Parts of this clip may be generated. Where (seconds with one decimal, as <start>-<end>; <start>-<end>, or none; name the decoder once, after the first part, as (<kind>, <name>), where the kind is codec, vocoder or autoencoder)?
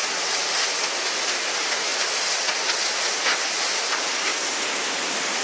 none